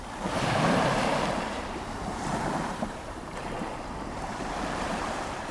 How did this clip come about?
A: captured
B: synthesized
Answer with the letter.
B